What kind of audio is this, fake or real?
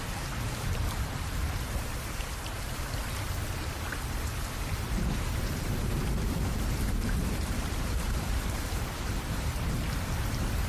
fake